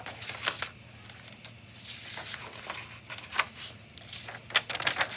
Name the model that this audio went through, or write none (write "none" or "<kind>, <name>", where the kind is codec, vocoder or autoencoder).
none